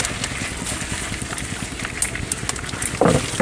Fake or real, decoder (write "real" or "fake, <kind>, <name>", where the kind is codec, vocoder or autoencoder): real